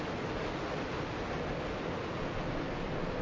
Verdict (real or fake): real